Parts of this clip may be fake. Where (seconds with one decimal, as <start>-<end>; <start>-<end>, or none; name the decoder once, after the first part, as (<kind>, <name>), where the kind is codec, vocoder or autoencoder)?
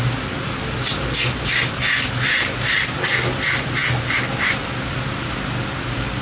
none